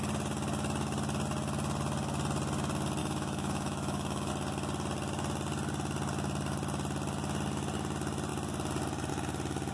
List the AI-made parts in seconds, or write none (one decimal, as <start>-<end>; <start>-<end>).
3.0-4.3